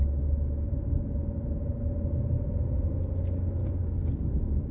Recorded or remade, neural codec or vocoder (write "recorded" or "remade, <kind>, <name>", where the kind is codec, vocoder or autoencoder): recorded